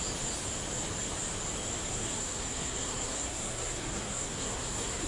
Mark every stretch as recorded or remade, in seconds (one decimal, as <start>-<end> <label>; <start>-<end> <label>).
0.0-1.9 recorded; 1.9-5.1 remade